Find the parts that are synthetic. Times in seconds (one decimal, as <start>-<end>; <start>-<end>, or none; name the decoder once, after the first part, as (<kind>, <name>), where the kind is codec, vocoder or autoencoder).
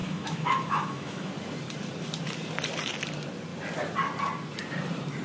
0.0-1.3 (autoencoder, DAC-VAE)